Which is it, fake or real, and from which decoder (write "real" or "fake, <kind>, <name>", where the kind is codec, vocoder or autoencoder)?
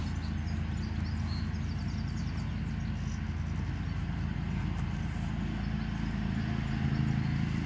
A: real